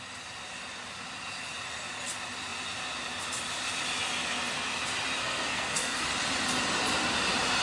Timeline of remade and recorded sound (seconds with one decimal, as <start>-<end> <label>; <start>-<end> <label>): 0.0-5.2 recorded; 5.2-6.0 remade; 6.0-7.6 recorded